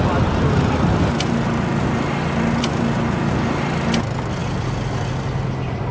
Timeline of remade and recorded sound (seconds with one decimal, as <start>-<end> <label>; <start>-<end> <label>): 0.0-5.9 recorded